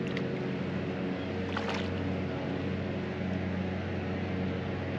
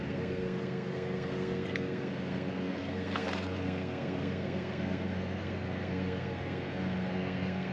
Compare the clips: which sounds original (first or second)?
first